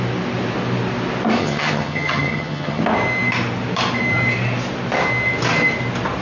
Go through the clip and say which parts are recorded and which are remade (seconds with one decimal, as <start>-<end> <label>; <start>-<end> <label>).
0.0-1.4 recorded; 1.4-2.8 remade; 2.8-6.2 recorded

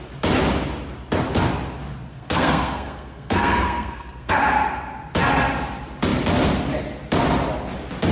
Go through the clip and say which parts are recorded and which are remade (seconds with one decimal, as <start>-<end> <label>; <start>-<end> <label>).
0.0-2.1 recorded; 2.1-4.3 remade; 4.3-8.1 recorded

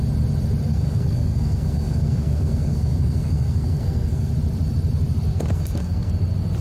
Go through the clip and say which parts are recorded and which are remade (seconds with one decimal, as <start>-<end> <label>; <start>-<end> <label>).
0.0-0.7 recorded; 0.7-4.3 remade; 4.3-5.3 recorded; 5.3-6.1 remade; 6.1-6.6 recorded

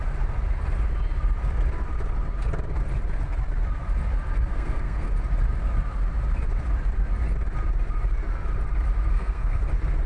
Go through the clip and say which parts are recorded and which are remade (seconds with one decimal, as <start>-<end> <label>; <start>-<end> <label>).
0.0-4.5 recorded; 4.5-5.1 remade; 5.1-9.1 recorded; 9.1-9.6 remade; 9.6-10.1 recorded